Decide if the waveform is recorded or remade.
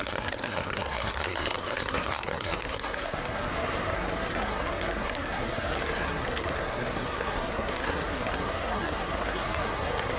remade